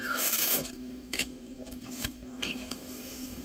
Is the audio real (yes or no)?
no